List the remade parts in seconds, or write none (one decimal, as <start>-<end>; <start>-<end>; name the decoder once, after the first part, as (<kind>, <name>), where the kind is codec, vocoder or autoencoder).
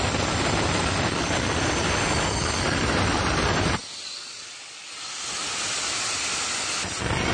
none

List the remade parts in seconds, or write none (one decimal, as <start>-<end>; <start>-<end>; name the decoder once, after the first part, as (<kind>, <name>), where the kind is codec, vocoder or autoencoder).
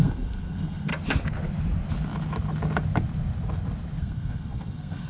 0.0-0.9 (codec, SNAC); 4.0-5.1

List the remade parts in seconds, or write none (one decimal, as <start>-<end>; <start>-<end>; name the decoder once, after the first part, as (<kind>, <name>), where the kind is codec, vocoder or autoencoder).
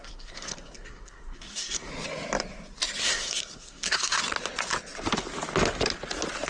0.0-1.9 (codec, SNAC); 3.0-4.2